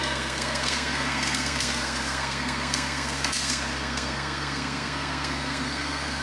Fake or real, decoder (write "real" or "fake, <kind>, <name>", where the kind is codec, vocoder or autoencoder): fake, codec, SNAC